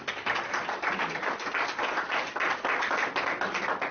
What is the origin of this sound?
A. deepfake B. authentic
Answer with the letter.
B